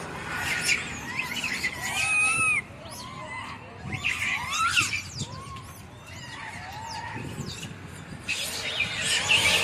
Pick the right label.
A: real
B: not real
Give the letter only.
A